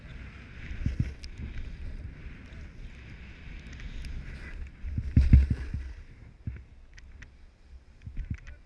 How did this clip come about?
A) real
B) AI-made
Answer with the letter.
A